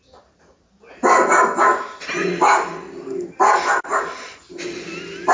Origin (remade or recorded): recorded